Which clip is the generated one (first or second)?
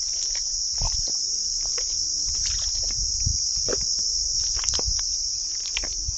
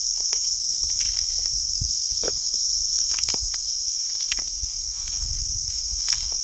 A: second